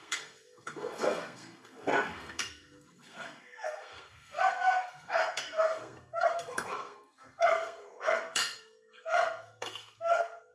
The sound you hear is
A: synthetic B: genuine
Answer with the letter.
A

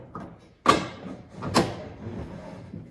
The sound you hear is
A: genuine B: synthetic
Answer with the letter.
A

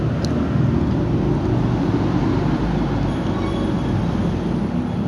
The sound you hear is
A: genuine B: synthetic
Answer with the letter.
A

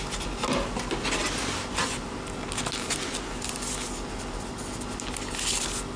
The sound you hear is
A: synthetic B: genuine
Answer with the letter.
B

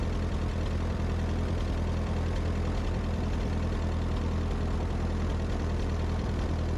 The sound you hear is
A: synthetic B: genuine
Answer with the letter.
B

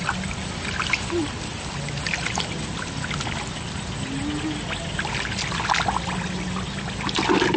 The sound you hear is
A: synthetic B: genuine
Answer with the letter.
B